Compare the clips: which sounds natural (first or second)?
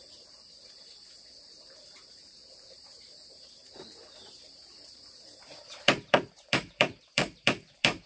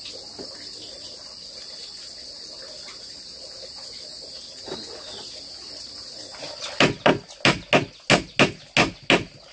second